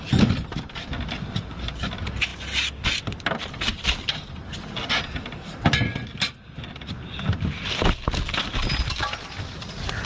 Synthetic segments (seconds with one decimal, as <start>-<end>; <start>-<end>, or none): none